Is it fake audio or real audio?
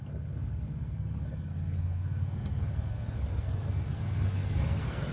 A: fake